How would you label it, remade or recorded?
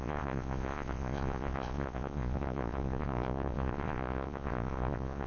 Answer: remade